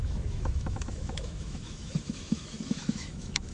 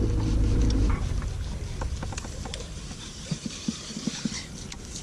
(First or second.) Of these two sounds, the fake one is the first